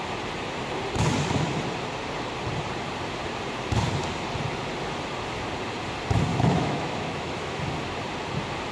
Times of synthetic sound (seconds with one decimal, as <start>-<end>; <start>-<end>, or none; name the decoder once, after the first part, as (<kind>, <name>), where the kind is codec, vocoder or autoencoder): 6.3-7.6 (autoencoder, DAC-VAE)